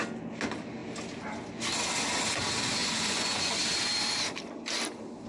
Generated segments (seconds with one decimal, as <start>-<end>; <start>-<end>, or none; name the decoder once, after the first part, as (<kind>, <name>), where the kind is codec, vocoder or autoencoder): 2.8-3.6 (vocoder, Vocos)